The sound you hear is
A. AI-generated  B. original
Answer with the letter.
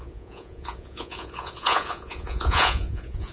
A